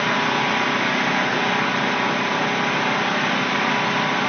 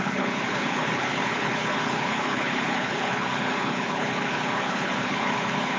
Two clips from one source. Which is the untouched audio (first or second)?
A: first